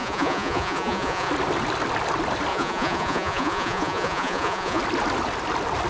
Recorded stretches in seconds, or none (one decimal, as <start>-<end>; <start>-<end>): 1.3-2.5; 4.8-5.9